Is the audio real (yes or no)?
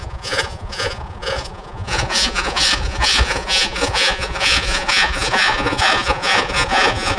no